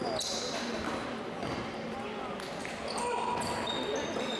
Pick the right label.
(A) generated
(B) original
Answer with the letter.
B